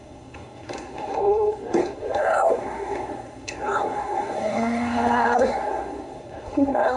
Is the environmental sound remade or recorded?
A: remade